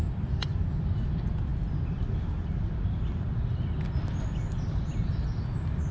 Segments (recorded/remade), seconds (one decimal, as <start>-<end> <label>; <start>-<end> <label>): 0.0-5.9 recorded